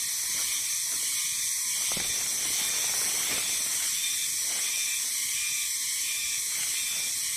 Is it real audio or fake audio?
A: real